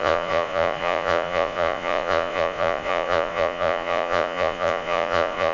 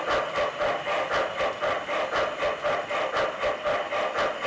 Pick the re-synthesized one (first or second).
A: first